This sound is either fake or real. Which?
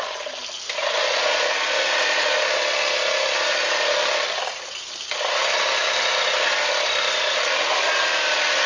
real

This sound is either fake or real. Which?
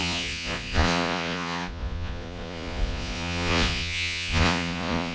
fake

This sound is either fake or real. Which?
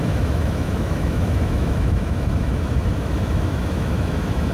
fake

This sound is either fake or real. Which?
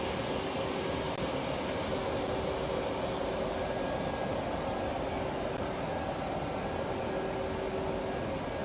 real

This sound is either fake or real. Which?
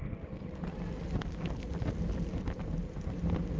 real